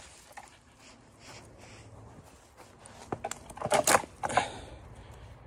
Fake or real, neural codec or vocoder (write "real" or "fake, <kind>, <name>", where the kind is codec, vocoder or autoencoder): real